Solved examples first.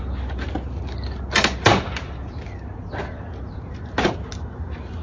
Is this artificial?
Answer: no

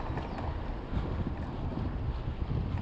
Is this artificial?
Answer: no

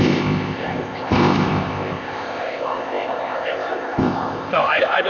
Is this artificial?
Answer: yes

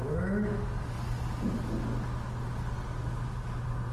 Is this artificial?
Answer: no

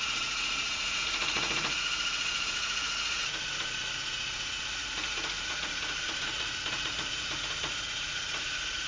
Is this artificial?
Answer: yes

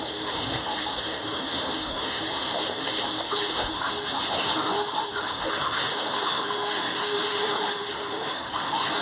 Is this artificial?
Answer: yes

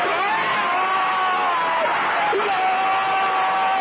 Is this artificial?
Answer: no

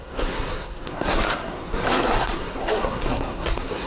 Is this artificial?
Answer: yes